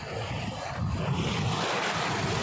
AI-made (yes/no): no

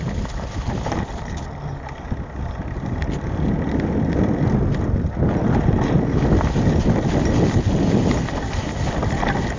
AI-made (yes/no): no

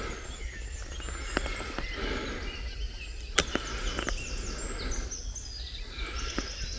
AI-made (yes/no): no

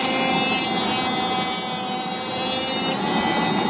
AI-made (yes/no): no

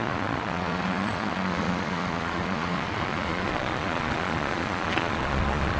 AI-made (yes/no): yes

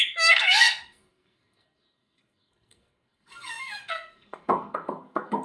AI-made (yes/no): yes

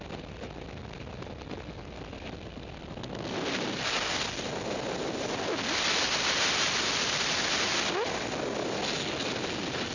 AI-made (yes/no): no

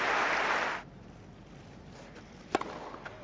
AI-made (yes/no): no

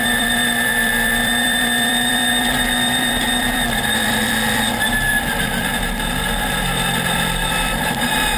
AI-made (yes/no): yes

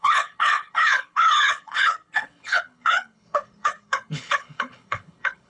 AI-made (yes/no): yes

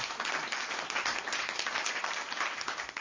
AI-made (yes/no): no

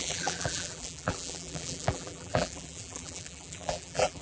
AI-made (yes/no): yes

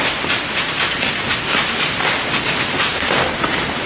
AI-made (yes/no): yes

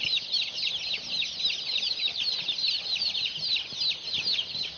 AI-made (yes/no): no